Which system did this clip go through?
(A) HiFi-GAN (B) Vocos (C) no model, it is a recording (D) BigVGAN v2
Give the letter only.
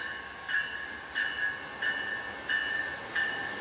C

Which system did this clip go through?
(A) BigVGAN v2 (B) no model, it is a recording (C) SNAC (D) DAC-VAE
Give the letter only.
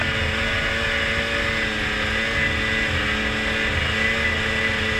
B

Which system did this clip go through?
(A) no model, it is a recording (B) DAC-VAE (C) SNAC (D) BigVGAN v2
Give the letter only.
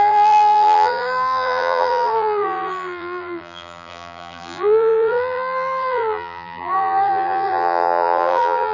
D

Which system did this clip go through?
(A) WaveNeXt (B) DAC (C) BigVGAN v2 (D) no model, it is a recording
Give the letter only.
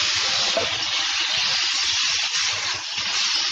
D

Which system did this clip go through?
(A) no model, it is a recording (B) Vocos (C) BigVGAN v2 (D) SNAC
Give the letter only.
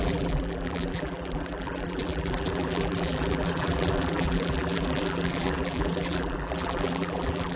C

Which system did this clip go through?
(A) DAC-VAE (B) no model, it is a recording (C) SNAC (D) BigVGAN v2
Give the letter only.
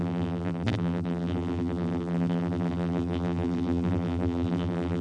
D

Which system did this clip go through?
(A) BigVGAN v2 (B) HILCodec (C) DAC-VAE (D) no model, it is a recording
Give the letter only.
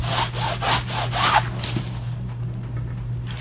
D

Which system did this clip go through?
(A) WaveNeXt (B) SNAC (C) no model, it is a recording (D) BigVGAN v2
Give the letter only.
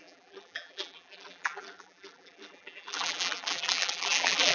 D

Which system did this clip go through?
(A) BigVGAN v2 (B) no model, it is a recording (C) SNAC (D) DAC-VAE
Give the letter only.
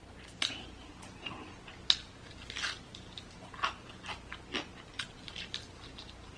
B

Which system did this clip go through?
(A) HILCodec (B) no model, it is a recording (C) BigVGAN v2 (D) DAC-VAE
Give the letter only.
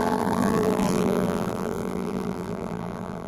C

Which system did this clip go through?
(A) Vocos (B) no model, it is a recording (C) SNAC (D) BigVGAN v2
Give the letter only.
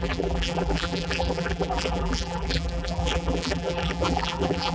D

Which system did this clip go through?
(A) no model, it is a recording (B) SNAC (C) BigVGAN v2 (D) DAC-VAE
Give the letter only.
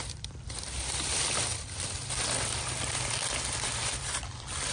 C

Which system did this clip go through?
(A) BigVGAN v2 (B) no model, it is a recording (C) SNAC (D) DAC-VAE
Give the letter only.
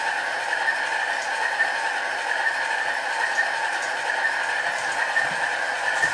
A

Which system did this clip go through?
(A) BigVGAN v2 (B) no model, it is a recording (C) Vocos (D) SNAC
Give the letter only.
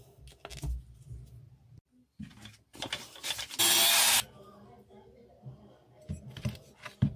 B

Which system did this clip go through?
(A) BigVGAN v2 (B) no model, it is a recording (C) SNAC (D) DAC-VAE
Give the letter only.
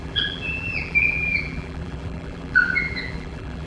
A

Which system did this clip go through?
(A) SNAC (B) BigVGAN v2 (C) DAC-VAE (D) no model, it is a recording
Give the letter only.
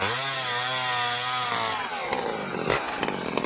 D